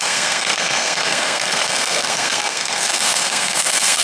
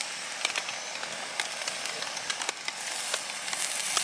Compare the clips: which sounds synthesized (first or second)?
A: first